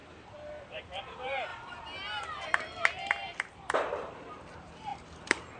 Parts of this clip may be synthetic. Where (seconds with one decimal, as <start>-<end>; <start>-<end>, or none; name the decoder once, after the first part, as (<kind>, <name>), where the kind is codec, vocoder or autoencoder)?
0.0-1.5 (vocoder, BigVGAN v2); 3.1-5.6

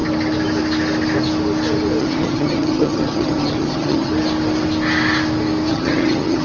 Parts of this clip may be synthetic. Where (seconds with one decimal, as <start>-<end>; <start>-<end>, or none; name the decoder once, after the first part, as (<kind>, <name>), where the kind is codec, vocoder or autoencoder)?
2.0-4.1 (vocoder, HiFi-GAN); 5.7-6.4

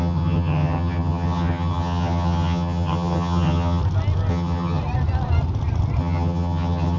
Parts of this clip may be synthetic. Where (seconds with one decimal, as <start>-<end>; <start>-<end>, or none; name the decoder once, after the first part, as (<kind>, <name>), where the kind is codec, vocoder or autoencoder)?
0.0-3.8 (vocoder, HiFi-GAN); 4.3-4.8; 6.0-7.0

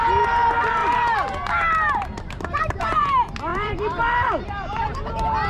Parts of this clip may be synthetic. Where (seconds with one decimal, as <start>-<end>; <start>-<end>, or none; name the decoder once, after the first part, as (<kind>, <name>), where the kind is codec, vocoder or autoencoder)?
3.5-4.8 (vocoder, BigVGAN v2)

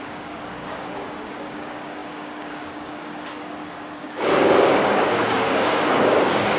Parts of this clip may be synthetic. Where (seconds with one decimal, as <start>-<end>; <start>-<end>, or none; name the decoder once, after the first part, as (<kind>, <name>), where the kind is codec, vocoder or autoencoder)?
0.0-6.6 (codec, DAC)

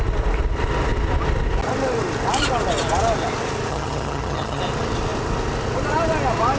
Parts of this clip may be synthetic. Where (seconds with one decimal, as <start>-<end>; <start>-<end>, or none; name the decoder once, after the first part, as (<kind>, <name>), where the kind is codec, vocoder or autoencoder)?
3.7-4.6 (vocoder, HiFi-GAN)

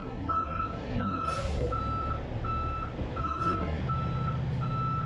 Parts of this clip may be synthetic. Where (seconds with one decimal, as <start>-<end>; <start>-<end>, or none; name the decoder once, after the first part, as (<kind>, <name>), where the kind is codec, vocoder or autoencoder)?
0.0-1.7 (codec, SNAC); 3.2-3.8

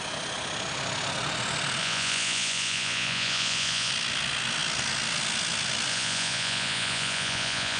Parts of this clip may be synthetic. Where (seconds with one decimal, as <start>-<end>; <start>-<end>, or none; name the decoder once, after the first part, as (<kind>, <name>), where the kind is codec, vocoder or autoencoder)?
1.8-3.9 (vocoder, Vocos); 5.9-7.8